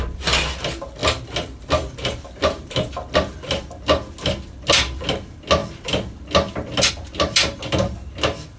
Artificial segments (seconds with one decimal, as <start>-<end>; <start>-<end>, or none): none